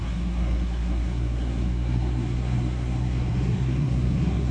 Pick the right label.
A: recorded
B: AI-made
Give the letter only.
B